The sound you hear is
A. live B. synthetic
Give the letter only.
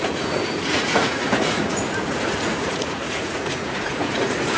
B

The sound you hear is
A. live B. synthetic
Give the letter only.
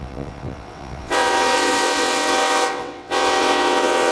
B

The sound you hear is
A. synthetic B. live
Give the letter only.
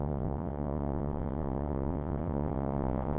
A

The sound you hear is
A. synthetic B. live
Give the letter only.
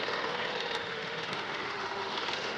A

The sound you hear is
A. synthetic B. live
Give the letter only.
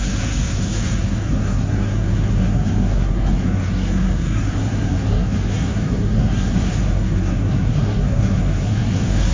A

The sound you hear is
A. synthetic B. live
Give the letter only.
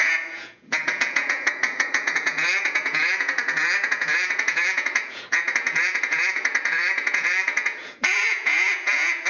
A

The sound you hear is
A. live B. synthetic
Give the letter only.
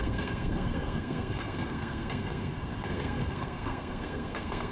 B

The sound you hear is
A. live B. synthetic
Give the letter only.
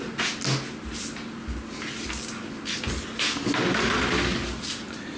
A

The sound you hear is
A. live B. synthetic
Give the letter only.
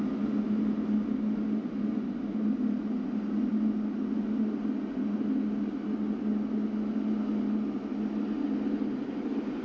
A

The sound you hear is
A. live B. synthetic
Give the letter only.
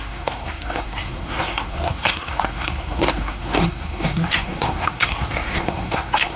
B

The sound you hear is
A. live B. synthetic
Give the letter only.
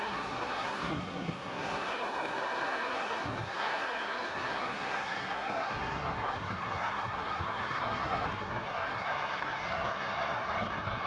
B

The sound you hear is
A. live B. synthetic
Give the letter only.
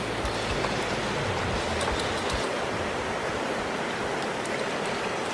A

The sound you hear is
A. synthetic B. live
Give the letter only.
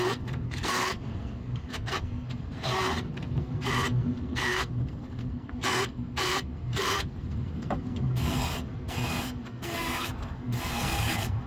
A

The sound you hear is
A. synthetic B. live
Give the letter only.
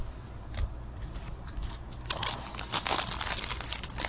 B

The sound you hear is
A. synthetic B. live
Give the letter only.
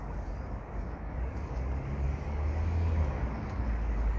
A